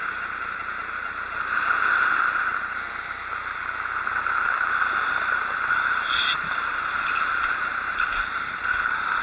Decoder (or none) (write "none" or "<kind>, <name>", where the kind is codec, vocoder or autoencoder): none